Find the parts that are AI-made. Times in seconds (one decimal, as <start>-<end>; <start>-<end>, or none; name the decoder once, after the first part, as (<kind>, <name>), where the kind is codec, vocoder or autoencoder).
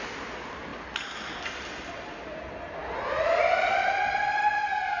none